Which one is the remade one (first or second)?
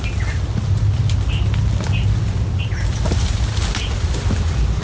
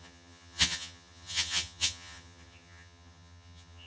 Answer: second